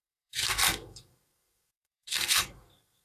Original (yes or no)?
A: no